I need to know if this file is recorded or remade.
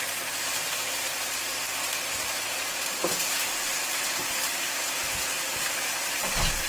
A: remade